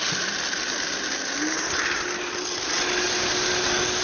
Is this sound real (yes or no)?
yes